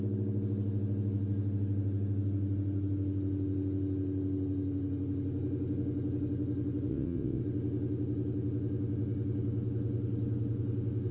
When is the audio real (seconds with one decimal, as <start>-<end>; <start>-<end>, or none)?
0.0-6.9; 7.4-11.1